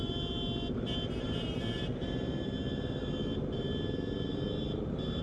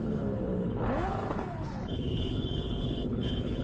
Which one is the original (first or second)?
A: first